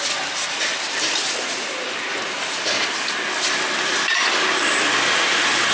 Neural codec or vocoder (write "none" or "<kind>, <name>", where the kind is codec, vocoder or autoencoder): none